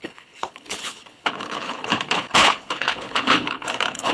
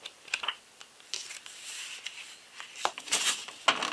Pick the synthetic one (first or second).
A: first